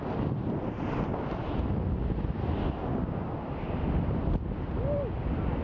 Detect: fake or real real